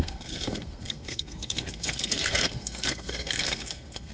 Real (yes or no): no